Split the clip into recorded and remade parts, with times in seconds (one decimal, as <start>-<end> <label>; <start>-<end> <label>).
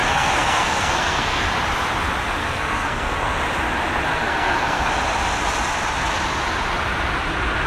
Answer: 0.0-1.5 remade; 1.5-2.4 recorded; 2.4-3.4 remade; 3.4-4.1 recorded; 4.1-4.9 remade; 4.9-7.7 recorded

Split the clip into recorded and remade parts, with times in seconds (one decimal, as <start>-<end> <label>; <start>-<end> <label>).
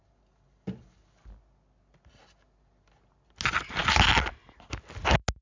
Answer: 0.0-5.4 recorded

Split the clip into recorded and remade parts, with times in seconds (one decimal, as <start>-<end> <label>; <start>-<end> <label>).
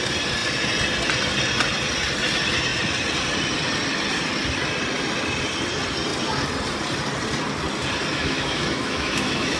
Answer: 0.0-8.1 recorded; 8.1-9.6 remade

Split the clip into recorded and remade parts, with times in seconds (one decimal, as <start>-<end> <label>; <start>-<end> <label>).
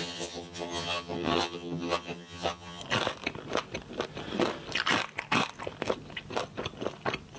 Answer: 0.0-2.8 remade; 2.8-7.4 recorded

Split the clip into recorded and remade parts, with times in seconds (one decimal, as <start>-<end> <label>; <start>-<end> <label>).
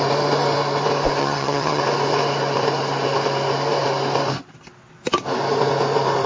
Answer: 0.0-1.2 recorded; 1.2-1.8 remade; 1.8-6.3 recorded